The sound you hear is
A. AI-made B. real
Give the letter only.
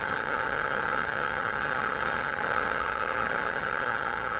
A